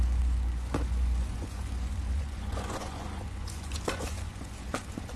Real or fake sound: fake